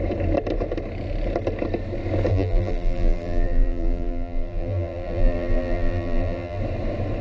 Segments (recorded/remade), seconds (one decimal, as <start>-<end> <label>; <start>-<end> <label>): 0.0-2.3 recorded; 2.3-6.6 remade; 6.6-7.2 recorded